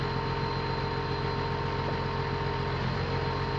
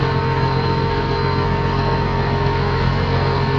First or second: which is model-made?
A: second